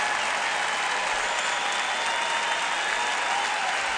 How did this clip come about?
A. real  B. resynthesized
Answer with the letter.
A